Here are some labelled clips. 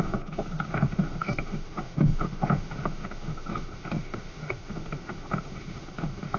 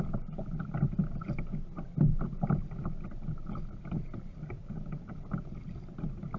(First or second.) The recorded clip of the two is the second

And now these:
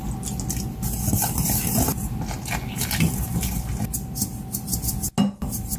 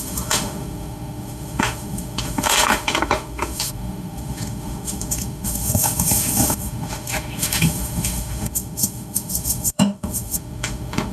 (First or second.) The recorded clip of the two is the first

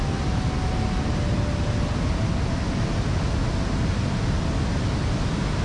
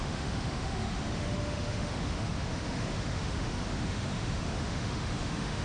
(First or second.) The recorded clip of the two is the first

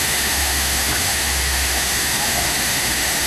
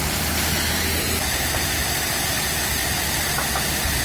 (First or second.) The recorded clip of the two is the second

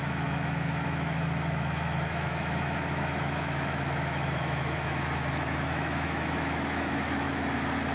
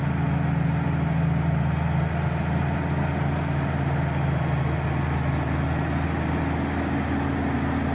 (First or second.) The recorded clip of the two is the second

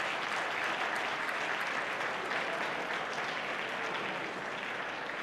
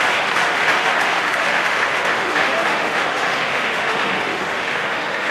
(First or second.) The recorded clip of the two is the first